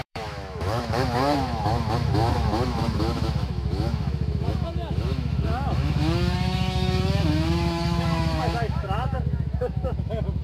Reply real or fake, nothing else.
fake